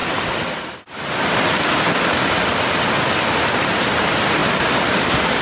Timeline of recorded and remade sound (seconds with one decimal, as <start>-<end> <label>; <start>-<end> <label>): 0.0-5.4 recorded